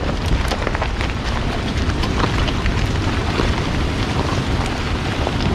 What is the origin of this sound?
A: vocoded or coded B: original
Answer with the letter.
A